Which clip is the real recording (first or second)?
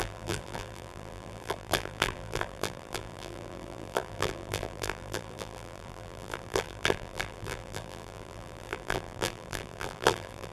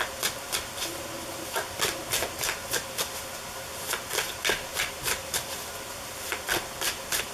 second